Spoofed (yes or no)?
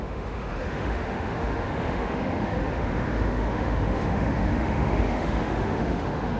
yes